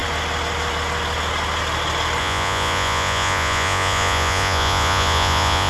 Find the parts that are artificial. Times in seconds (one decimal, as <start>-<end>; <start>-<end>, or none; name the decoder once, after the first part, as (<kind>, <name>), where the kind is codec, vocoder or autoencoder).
2.2-5.7 (vocoder, Vocos)